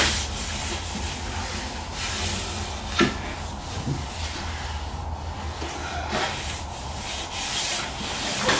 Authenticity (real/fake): real